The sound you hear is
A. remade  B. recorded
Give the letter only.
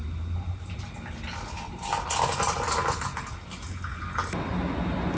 B